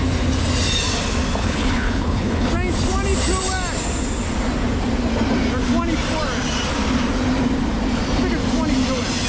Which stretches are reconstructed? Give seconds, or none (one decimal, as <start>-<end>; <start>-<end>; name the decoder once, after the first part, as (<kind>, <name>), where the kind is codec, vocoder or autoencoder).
1.4-2.5 (codec, HILCodec)